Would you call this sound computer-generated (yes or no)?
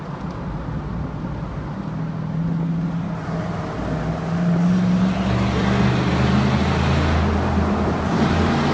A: no